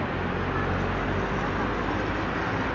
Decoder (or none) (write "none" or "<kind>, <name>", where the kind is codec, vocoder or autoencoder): none